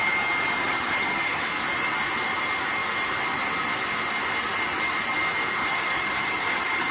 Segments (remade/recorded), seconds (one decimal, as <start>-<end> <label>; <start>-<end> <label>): 0.0-0.6 recorded; 0.6-1.4 remade; 1.4-5.6 recorded; 5.6-6.9 remade